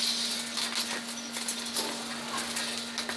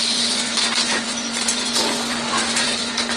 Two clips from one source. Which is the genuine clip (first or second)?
first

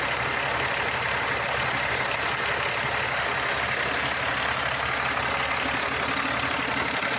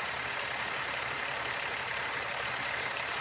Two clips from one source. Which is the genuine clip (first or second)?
first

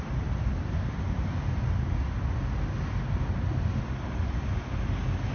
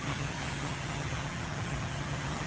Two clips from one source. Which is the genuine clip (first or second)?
first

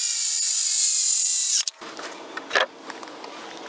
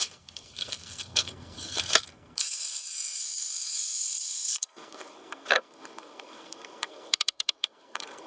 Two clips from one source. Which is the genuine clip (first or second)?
first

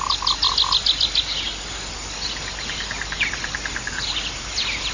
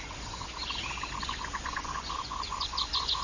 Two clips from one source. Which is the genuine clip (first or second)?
first